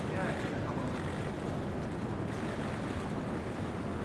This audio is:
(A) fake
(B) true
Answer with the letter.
B